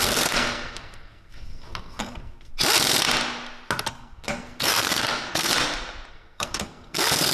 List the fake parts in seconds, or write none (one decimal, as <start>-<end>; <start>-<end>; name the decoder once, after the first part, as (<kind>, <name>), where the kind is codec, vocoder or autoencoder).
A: 0.0-2.5 (codec, SNAC); 3.9-5.5; 6.1-7.3